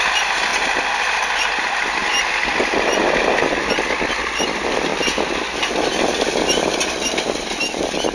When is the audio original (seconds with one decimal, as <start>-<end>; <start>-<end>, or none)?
0.0-8.1